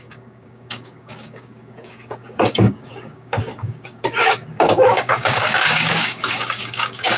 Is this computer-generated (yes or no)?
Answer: yes